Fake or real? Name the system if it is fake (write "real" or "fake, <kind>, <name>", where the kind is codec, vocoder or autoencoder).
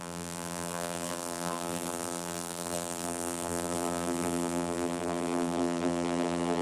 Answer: fake, vocoder, BigVGAN v2